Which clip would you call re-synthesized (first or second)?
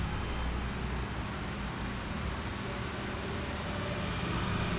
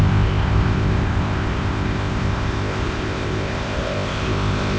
second